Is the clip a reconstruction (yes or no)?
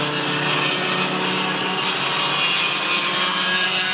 no